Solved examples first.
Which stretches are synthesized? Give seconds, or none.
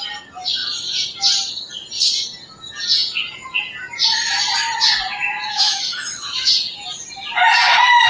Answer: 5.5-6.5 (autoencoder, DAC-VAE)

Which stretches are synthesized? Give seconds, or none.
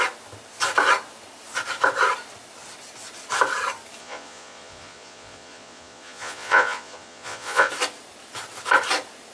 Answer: 4.0-7.7 (vocoder, Vocos)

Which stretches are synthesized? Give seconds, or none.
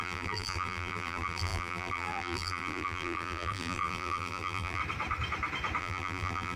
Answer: 0.0-4.8 (vocoder, BigVGAN v2); 5.8-6.6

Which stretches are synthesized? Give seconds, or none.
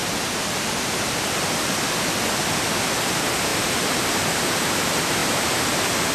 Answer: 0.0-1.3 (vocoder, BigVGAN v2); 3.5-4.8; 5.2-6.1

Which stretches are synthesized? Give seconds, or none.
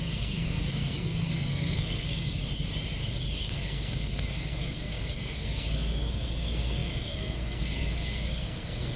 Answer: 0.0-2.4 (codec, SNAC); 3.4-9.0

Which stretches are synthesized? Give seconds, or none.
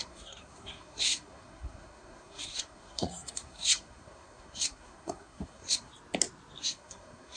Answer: 0.0-5.9 (codec, SNAC); 6.6-7.4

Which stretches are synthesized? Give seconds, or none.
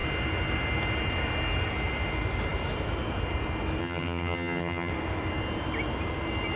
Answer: 3.8-4.9 (vocoder, HiFi-GAN)